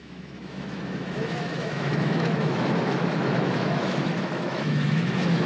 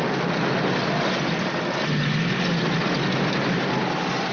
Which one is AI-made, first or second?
first